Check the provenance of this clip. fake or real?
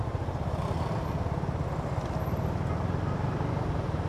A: real